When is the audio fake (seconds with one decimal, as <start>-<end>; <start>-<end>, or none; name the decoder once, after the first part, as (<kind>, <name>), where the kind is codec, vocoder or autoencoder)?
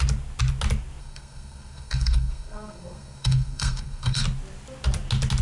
1.0-4.2 (codec, SNAC)